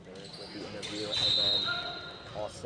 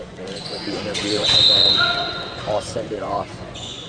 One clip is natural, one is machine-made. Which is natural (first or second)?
first